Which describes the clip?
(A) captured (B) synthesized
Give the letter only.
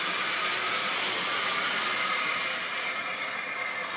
A